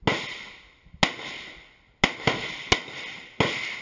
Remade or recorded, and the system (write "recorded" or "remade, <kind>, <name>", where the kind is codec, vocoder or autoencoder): recorded